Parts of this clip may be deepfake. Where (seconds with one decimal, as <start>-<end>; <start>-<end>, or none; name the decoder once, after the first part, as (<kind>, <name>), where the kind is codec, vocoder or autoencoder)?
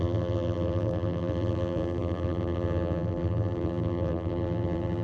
0.0-5.0 (vocoder, BigVGAN v2)